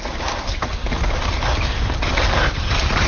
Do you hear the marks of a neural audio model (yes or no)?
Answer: no